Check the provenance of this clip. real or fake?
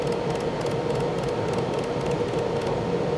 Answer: real